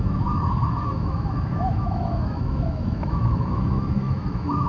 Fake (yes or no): yes